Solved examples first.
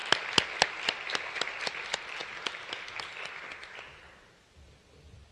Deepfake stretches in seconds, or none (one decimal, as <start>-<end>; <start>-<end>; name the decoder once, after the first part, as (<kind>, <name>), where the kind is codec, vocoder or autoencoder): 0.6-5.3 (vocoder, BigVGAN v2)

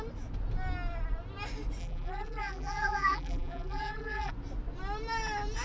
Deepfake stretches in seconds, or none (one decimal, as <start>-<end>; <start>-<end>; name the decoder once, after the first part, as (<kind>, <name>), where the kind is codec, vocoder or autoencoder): 1.8-4.3 (vocoder, BigVGAN v2)

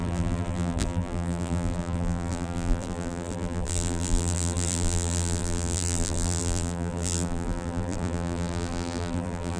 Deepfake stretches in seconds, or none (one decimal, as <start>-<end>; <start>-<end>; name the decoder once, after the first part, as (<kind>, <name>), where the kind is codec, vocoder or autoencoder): 0.0-9.6 (vocoder, BigVGAN v2)

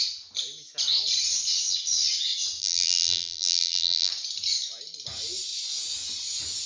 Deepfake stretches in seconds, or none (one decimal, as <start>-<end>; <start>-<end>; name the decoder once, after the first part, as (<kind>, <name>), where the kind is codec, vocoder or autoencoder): 2.6-4.1 (vocoder, BigVGAN v2)

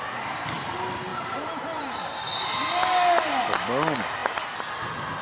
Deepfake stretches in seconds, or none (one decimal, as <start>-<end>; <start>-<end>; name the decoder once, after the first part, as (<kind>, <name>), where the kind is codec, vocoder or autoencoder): 1.1-2.3 (vocoder, BigVGAN v2)

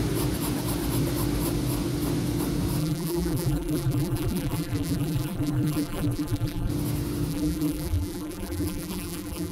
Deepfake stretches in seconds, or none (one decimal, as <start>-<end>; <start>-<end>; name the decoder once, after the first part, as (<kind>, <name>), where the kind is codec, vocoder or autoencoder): 2.8-6.7 (vocoder, BigVGAN v2); 7.3-9.5